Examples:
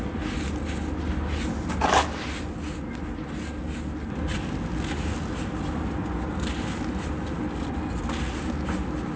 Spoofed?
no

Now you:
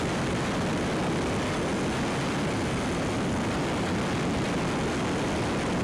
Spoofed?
no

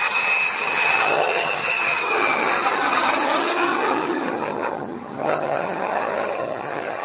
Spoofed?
yes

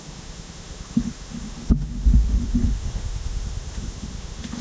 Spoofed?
yes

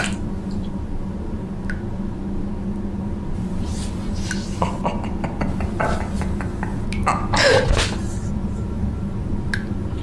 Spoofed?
no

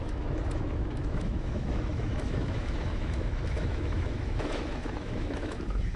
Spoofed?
yes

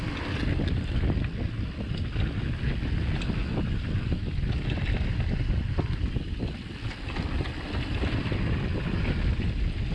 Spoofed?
no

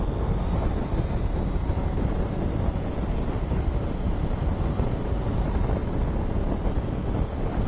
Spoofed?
no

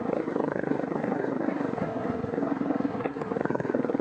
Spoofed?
yes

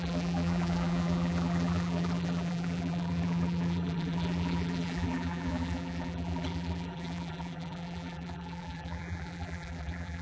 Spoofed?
yes